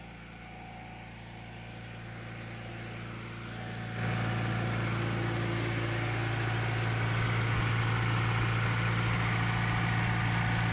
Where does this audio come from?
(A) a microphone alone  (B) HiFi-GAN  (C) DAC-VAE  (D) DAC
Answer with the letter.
A